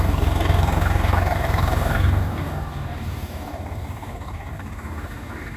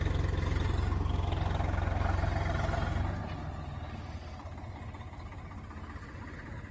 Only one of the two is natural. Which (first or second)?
second